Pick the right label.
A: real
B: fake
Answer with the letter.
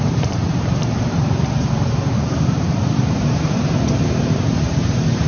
B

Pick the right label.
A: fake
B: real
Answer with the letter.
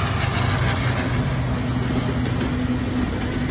B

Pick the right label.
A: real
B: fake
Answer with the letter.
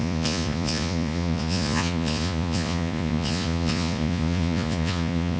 B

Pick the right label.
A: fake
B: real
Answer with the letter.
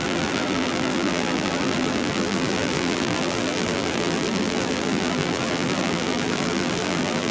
A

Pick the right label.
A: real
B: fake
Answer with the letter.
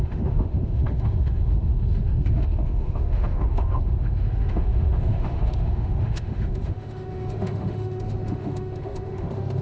B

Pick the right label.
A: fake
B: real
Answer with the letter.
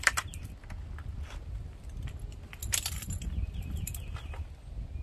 B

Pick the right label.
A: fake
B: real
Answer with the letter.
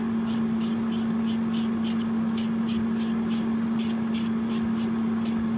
B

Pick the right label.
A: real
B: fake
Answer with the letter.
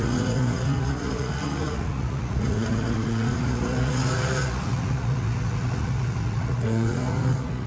B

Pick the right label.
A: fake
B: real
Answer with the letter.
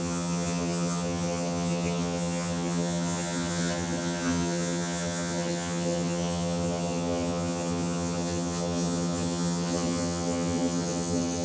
A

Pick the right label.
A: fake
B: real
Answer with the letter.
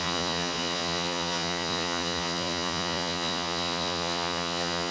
A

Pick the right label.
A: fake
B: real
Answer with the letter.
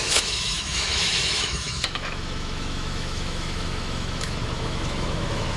A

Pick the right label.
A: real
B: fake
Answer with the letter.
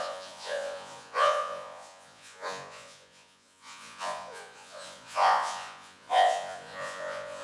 B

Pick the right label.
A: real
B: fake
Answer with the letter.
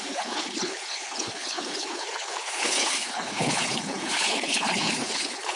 B